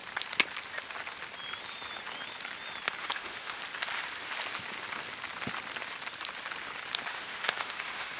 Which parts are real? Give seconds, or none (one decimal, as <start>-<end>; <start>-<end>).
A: 0.0-3.0; 3.6-7.1